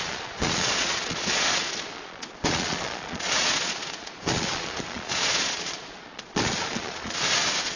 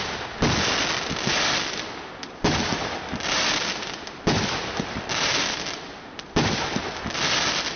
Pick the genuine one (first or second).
second